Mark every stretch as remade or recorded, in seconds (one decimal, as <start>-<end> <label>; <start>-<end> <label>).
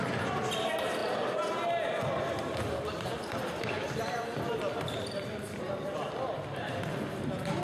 0.0-7.6 recorded